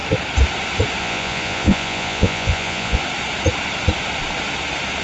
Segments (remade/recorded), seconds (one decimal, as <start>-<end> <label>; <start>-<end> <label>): 0.0-1.0 recorded; 1.0-3.0 remade; 3.0-5.0 recorded

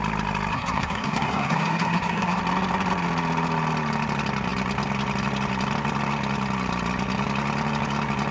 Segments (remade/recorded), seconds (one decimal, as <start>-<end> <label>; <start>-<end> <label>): 0.0-0.5 recorded; 0.5-2.4 remade; 2.4-8.3 recorded

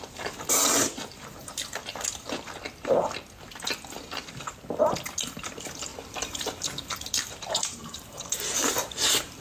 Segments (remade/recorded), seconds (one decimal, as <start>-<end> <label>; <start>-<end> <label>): 0.0-1.4 remade; 1.4-5.5 recorded; 5.5-5.9 remade; 5.9-7.1 recorded; 7.1-9.4 remade

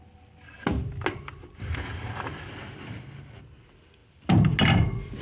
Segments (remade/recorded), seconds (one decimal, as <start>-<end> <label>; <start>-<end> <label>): 0.0-5.2 recorded